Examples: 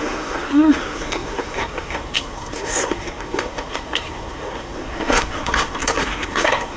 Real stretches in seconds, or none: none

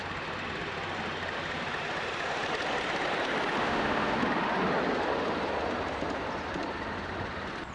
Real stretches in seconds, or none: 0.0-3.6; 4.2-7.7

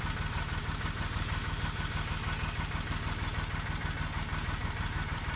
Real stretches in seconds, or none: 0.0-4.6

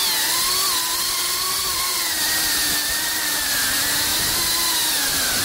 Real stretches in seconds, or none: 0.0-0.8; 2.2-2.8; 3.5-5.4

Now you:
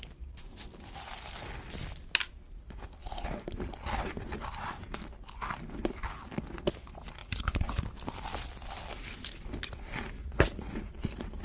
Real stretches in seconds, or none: 0.0-7.2; 7.8-10.2; 10.9-11.4

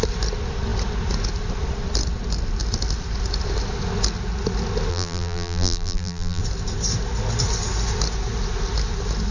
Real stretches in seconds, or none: 0.0-4.9; 6.4-9.3

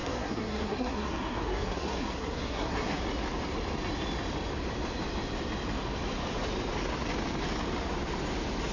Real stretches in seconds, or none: 3.0-8.7

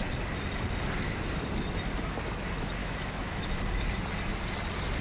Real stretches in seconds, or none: 0.0-2.8; 3.6-5.0